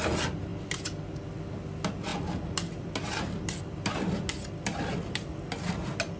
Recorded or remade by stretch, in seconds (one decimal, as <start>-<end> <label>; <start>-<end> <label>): 0.0-6.2 recorded